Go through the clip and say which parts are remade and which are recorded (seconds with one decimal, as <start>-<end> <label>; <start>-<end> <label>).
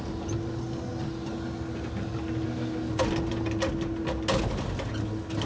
0.0-5.5 recorded